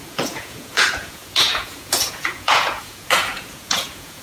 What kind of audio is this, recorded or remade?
remade